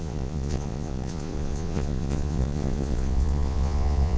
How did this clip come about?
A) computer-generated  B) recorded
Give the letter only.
A